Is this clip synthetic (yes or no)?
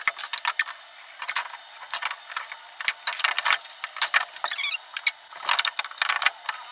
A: no